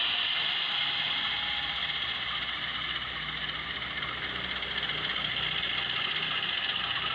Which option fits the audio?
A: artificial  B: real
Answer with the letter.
B